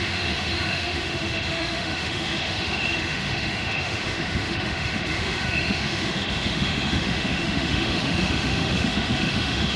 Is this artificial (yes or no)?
yes